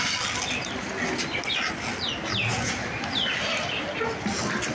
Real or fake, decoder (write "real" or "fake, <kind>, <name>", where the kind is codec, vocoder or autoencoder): real